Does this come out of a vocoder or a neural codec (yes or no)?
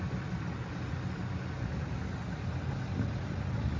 no